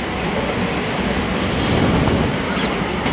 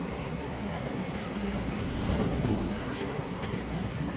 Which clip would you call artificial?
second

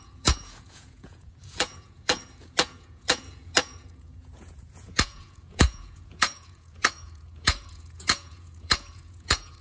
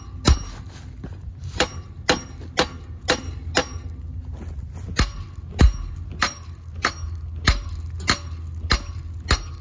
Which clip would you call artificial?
first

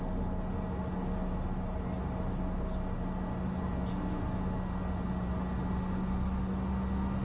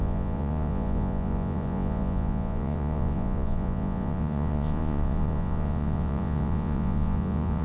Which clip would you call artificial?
second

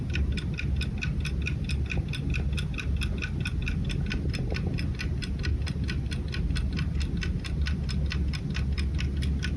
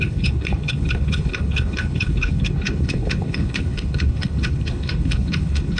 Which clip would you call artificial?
second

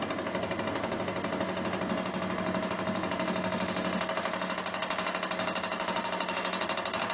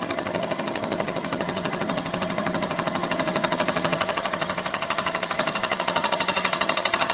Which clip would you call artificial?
second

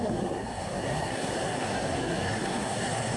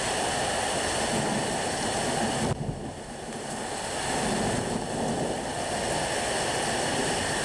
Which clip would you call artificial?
first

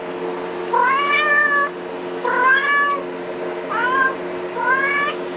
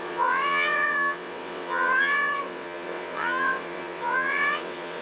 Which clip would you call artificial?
second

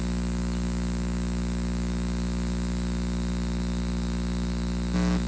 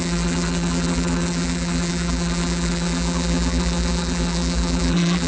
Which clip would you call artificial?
second